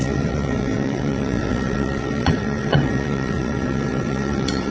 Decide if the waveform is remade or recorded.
remade